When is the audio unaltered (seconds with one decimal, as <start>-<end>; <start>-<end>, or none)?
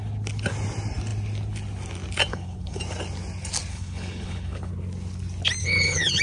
0.0-2.3; 2.8-3.7; 4.7-5.6